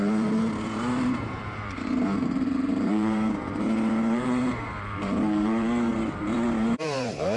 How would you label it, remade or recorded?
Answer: remade